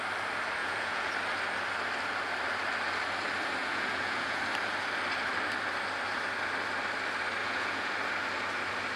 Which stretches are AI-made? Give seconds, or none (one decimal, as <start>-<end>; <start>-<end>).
0.6-1.1; 3.6-4.4; 7.4-7.9